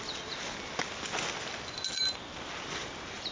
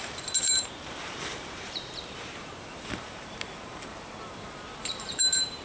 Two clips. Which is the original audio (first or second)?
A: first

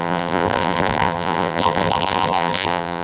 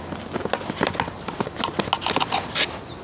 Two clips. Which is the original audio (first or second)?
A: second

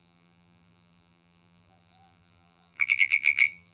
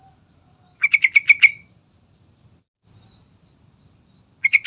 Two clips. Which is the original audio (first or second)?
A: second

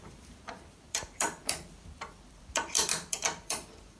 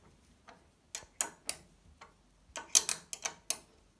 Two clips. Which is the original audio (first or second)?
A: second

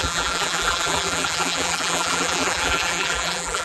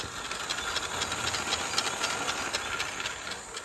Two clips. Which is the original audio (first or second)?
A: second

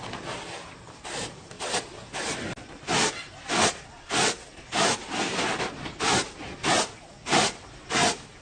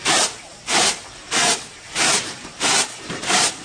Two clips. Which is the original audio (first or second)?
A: first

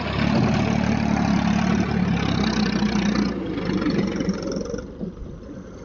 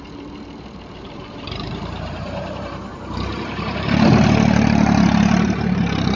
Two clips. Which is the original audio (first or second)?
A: first